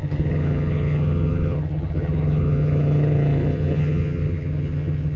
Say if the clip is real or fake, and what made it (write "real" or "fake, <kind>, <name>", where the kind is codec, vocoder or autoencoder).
fake, vocoder, HiFi-GAN